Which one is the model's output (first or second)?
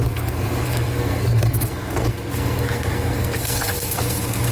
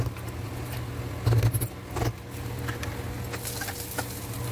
first